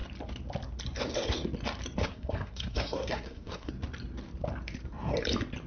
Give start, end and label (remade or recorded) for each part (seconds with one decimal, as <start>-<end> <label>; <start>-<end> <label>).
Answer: 0.0-2.0 recorded; 2.0-3.7 remade; 3.7-5.7 recorded